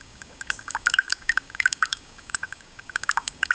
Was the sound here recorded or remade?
remade